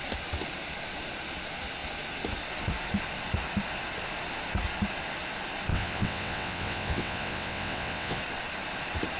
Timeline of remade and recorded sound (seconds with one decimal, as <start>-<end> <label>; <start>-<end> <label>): 0.0-5.7 recorded; 5.7-8.2 remade; 8.2-9.2 recorded